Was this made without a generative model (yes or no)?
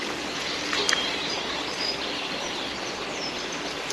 yes